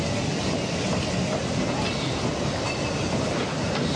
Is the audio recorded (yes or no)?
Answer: yes